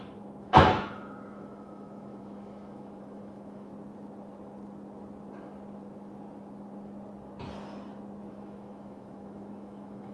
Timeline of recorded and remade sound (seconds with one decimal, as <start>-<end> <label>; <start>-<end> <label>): 0.0-3.7 remade; 3.7-8.3 recorded; 8.3-10.1 remade